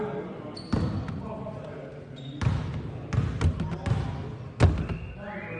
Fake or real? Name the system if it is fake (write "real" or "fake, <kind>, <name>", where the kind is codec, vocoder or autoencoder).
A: real